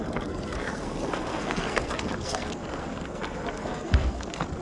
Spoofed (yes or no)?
yes